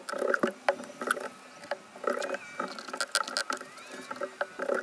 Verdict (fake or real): real